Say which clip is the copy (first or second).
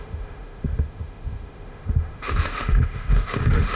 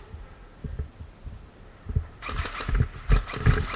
first